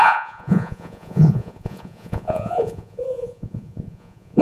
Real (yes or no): no